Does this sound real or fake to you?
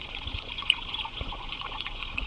fake